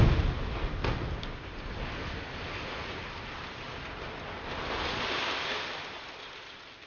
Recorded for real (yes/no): yes